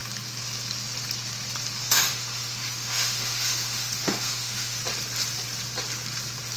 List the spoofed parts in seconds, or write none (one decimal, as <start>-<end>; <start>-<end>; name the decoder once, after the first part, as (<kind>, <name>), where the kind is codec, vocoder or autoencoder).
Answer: 1.8-4.8 (autoencoder, DAC-VAE)